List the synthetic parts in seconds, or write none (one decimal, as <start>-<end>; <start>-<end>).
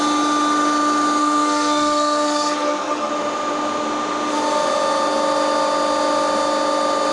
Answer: 1.2-3.1